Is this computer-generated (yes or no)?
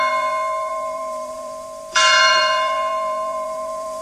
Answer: yes